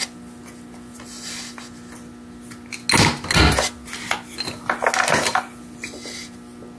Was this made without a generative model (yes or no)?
yes